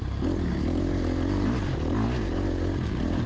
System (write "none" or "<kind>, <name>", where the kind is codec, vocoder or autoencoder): none